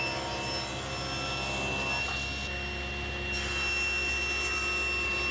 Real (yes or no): yes